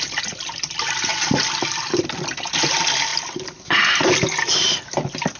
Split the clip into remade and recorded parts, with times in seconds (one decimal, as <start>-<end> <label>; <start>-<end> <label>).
0.0-5.4 recorded